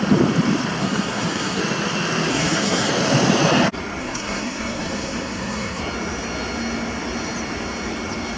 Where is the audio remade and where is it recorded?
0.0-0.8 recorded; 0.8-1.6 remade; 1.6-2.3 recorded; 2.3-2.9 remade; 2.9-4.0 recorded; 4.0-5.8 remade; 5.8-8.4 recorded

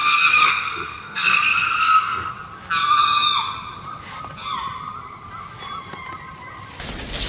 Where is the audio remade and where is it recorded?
0.0-2.3 remade; 2.3-7.3 recorded